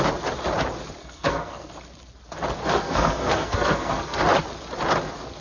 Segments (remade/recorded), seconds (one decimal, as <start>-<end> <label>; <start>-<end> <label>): 0.0-1.0 recorded; 1.0-1.7 remade; 1.7-2.6 recorded; 2.6-4.2 remade; 4.2-5.4 recorded